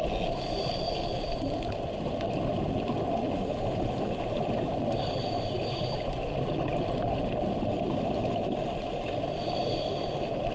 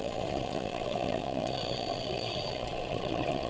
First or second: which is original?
first